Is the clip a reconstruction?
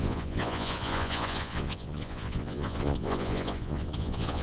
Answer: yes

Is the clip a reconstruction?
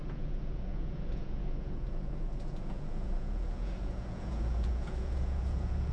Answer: yes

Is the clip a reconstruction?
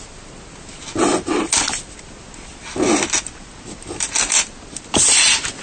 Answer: no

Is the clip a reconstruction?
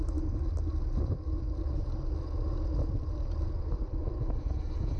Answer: no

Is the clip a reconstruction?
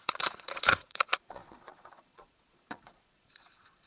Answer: yes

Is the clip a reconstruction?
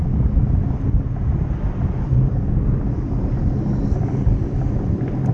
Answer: no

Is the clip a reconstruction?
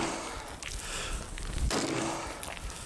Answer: no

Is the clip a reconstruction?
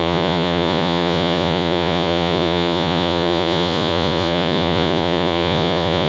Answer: yes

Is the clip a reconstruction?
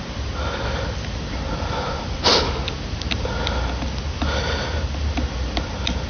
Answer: no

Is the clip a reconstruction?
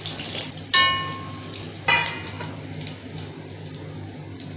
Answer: no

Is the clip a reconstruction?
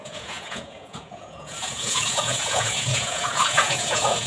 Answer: yes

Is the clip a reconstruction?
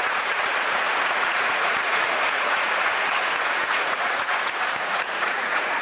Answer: yes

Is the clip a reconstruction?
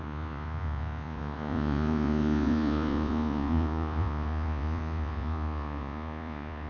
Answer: yes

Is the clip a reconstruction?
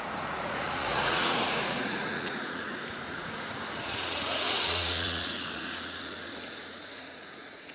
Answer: yes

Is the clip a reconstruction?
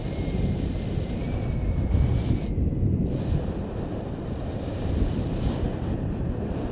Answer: no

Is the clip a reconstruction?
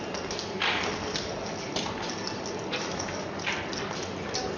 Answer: no